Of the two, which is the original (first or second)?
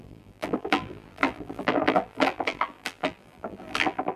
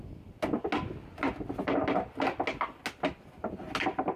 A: second